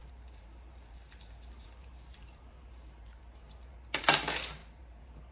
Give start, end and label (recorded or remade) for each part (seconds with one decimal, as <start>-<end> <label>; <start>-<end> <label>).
0.0-5.3 remade